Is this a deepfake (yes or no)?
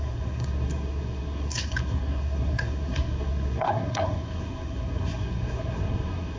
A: yes